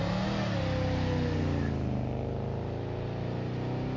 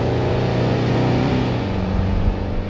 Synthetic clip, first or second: second